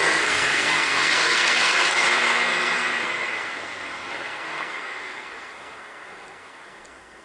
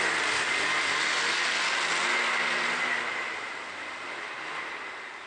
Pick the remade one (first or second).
first